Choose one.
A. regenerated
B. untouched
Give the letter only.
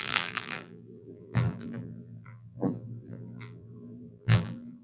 A